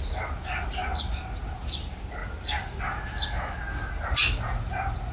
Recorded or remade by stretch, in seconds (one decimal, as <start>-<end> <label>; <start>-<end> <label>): 0.0-2.2 recorded; 2.2-2.8 remade; 2.8-5.1 recorded